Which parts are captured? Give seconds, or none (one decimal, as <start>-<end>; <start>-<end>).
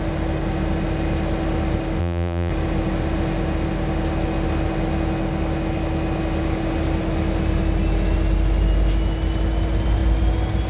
0.0-2.0; 2.5-10.7